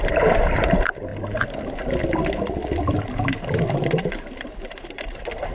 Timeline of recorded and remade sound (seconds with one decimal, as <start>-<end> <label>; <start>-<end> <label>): 0.0-1.1 remade; 1.1-3.5 recorded; 3.5-5.5 remade